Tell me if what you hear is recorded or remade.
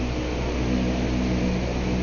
recorded